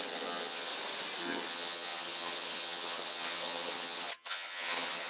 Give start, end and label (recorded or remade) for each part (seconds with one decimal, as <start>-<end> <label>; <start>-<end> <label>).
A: 0.0-0.7 remade; 0.7-1.2 recorded; 1.2-5.1 remade